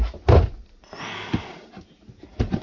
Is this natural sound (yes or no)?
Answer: yes